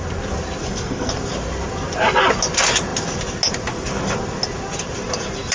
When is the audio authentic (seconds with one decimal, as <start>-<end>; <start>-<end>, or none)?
0.0-0.6; 1.1-5.5